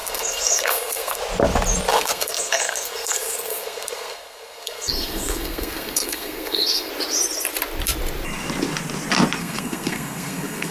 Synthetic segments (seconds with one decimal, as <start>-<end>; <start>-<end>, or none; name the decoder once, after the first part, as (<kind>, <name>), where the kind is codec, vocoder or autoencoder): 0.0-1.2 (codec, SNAC); 1.9-6.9; 9.4-10.7